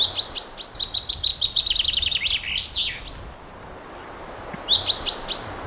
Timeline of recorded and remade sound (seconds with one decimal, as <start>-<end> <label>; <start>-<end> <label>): 0.0-5.7 recorded

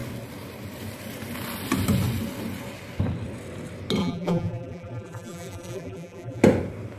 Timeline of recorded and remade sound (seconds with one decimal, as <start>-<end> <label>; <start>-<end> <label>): 0.0-4.0 recorded; 4.0-6.4 remade; 6.4-7.0 recorded

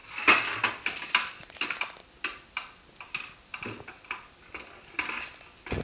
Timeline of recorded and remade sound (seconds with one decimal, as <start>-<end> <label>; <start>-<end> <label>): 0.0-5.8 recorded